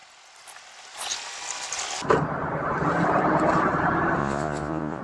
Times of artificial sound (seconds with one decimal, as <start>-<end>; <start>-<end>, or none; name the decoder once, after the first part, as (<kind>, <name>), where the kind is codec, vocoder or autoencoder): 4.2-5.0 (vocoder, Vocos)